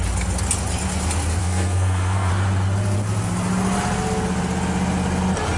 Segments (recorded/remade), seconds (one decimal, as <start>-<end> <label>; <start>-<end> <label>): 0.0-1.4 recorded; 1.4-2.3 remade; 2.3-5.6 recorded